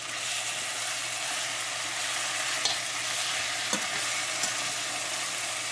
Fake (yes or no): no